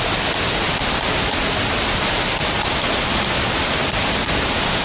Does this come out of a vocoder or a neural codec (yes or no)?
no